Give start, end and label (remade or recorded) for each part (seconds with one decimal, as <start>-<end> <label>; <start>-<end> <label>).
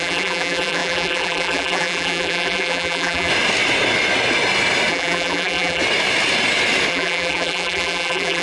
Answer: 0.0-3.3 remade; 3.3-4.9 recorded; 4.9-5.8 remade; 5.8-6.9 recorded; 6.9-8.4 remade